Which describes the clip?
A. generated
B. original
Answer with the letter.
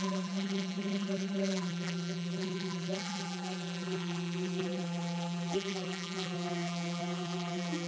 A